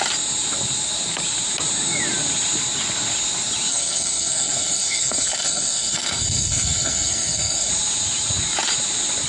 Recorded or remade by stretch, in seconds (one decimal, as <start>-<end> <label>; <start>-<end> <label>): 0.0-3.7 recorded; 3.7-7.7 remade; 7.7-9.3 recorded